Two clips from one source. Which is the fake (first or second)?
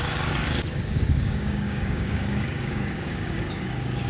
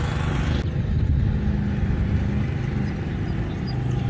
first